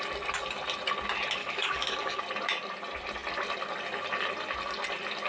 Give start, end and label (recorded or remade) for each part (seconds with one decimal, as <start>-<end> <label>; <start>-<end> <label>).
0.0-1.4 recorded; 1.4-2.2 remade; 2.2-5.3 recorded